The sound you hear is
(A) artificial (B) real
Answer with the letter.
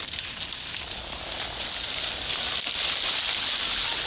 B